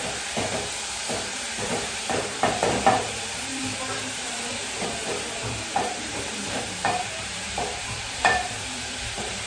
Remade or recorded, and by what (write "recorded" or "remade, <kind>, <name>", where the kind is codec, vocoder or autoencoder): remade, vocoder, BigVGAN v2